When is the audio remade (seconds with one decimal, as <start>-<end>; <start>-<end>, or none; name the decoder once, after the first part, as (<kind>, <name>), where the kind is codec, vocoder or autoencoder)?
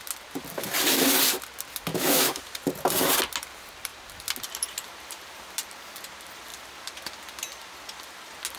1.9-2.4 (autoencoder, DAC-VAE)